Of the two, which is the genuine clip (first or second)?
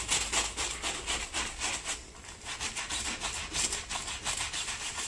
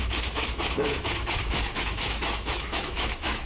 first